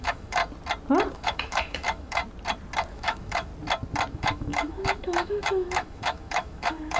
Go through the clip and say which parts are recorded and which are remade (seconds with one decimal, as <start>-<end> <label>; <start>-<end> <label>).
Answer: 0.0-0.4 remade; 0.4-1.1 recorded; 1.1-2.2 remade; 2.2-2.9 recorded; 2.9-3.5 remade; 3.5-4.1 recorded; 4.1-7.0 remade